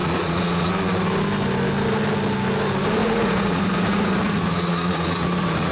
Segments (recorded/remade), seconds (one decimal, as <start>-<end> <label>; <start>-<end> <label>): 0.0-0.7 remade; 0.7-3.0 recorded; 3.0-5.7 remade